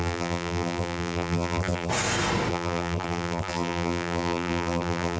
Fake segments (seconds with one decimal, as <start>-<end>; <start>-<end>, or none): 0.0-1.9; 2.5-5.2